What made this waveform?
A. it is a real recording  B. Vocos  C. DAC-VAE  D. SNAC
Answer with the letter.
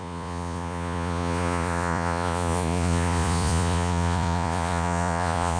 B